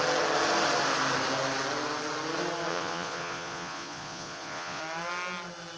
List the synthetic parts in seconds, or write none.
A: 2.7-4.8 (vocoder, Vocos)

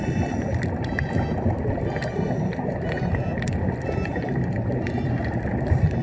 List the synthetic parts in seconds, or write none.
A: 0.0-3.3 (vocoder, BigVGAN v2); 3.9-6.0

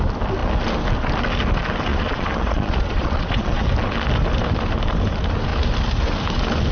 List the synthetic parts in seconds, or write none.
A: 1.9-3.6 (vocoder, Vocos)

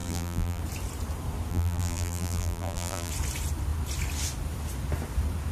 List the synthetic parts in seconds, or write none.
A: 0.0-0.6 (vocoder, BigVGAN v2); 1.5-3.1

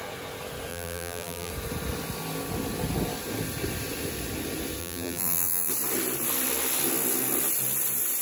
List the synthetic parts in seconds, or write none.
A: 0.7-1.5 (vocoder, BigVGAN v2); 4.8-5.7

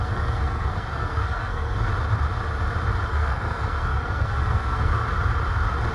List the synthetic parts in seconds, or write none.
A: 0.0-1.9 (codec, SNAC); 3.1-5.0

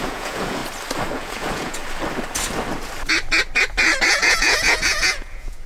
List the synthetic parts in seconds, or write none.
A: 0.0-0.6 (vocoder, Vocos); 1.1-1.8; 4.1-5.7